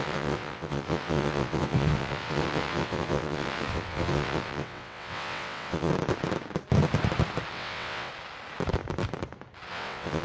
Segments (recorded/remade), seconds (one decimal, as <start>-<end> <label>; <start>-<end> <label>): 0.0-5.9 remade; 5.9-7.5 recorded; 7.5-8.1 remade; 8.1-9.7 recorded; 9.7-10.2 remade